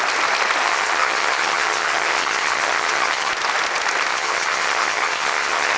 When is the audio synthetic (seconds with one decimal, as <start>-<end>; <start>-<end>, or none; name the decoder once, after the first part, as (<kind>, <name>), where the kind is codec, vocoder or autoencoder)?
0.6-3.3 (vocoder, HiFi-GAN); 4.1-5.8